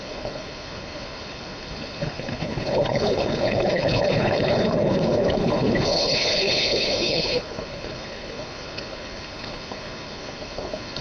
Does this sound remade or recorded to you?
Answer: remade